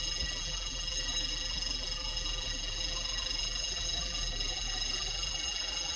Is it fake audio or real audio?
fake